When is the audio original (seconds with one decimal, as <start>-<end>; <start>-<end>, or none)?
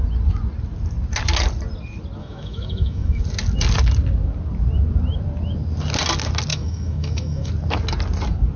0.0-2.2; 3.2-6.5; 7.5-8.6